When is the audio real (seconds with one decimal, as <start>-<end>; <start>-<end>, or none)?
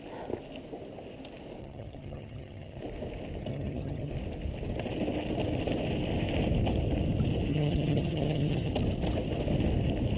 0.0-1.6; 2.8-3.5; 4.1-7.5; 8.7-10.2